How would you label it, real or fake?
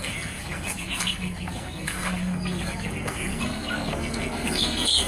fake